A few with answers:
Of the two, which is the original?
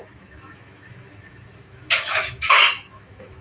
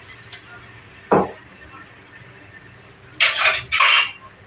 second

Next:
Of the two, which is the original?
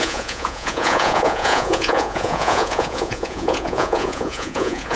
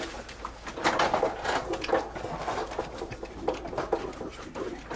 second